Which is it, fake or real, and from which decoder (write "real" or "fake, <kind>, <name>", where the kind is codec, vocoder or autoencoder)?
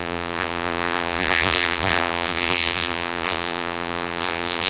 fake, vocoder, BigVGAN v2